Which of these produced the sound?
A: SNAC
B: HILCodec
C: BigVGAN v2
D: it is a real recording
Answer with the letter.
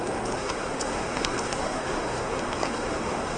A